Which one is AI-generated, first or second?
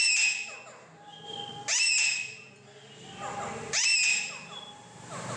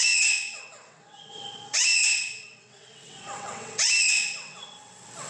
second